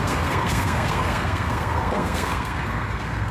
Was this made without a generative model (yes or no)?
no